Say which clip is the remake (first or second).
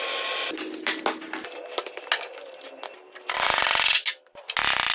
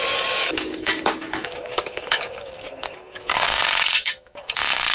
second